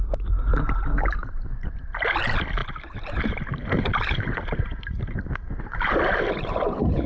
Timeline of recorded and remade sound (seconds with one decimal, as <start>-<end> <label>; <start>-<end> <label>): 0.0-7.1 recorded